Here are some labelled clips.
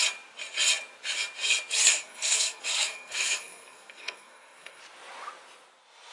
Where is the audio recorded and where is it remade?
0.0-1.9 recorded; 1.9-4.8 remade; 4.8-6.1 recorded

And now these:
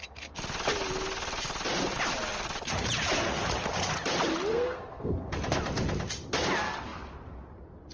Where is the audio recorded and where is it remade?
0.0-4.5 recorded; 4.5-5.3 remade; 5.3-7.9 recorded

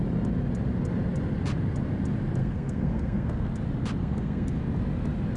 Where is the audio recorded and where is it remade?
0.0-2.4 recorded; 2.4-3.5 remade; 3.5-4.0 recorded; 4.0-4.6 remade; 4.6-5.4 recorded

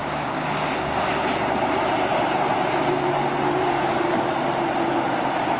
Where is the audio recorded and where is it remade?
0.0-1.1 remade; 1.1-3.6 recorded; 3.6-4.5 remade; 4.5-5.6 recorded